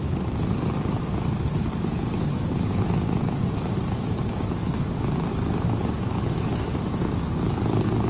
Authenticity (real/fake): fake